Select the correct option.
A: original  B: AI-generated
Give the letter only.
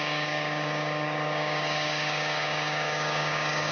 B